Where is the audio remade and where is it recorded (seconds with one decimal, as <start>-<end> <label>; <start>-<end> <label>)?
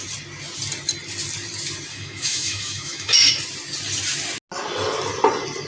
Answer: 0.0-1.9 recorded; 1.9-3.3 remade; 3.3-5.7 recorded